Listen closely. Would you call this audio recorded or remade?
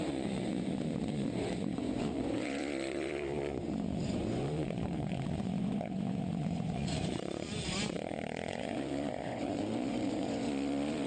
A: remade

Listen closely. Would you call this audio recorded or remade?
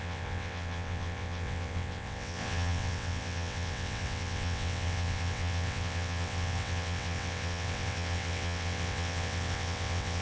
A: remade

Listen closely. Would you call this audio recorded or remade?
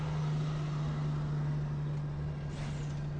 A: recorded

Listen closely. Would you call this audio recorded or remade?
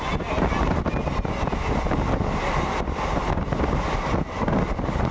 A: recorded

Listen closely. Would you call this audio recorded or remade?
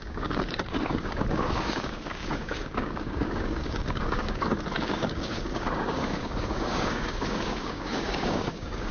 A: remade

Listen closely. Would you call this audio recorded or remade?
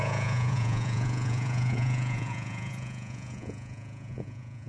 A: remade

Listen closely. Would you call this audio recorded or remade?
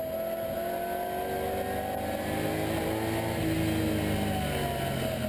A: recorded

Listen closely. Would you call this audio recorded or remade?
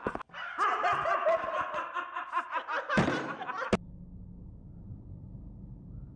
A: recorded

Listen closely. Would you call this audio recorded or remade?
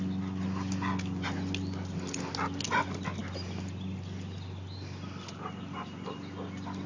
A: recorded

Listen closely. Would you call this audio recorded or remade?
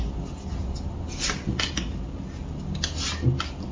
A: recorded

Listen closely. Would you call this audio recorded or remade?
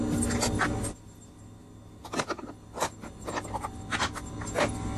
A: recorded